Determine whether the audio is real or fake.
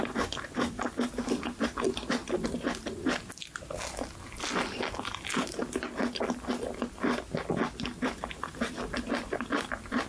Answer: real